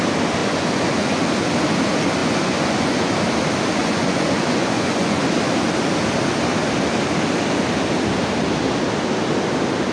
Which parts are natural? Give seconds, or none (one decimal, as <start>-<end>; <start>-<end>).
0.0-0.4; 1.2-2.2; 3.1-3.8; 5.2-9.9